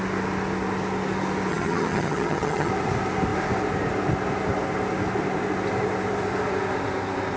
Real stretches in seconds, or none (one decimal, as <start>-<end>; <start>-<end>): 0.0-1.5; 2.7-7.4